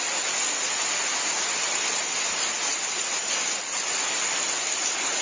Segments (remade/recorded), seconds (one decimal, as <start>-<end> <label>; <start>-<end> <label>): 0.0-5.2 recorded